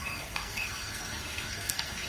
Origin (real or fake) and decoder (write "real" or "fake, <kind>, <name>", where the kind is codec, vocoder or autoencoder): fake, codec, SNAC